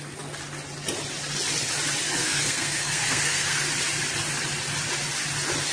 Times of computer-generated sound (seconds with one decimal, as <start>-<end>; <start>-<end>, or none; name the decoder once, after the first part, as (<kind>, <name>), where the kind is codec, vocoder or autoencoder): 2.2-3.6 (codec, SNAC)